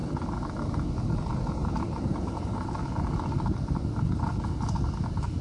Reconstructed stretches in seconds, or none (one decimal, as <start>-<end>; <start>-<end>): none